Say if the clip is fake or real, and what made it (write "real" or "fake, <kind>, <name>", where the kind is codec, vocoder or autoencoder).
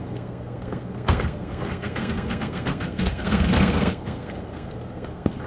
fake, codec, SNAC